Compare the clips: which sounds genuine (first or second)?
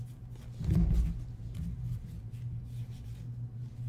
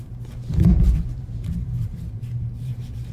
first